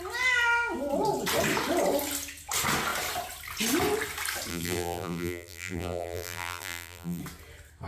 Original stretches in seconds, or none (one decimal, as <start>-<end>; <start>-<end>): 0.0-4.5; 7.2-7.9